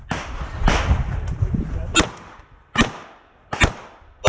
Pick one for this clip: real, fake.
real